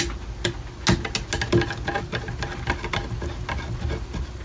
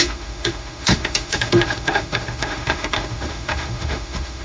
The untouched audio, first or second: first